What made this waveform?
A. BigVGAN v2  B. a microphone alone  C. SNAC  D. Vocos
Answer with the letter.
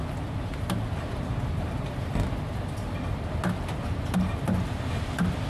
B